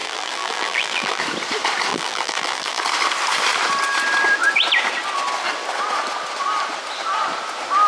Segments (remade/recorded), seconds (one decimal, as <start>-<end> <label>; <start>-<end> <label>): 0.0-1.2 remade; 1.2-1.9 recorded; 1.9-2.8 remade; 2.8-7.9 recorded